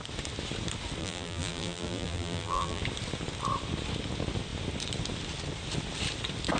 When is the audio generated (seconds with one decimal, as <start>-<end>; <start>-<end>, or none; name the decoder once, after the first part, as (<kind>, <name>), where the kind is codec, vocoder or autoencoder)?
1.0-2.8 (vocoder, BigVGAN v2)